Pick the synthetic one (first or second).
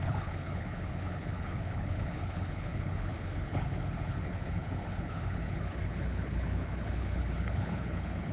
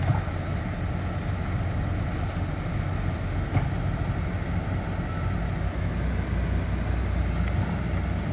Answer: first